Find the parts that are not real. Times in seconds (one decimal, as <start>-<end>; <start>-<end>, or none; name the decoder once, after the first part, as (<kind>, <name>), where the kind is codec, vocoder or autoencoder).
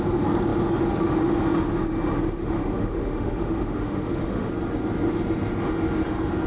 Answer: 2.4-4.5 (autoencoder, DAC-VAE)